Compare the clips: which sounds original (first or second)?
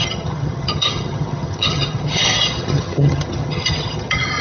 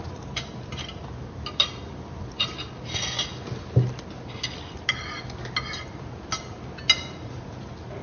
second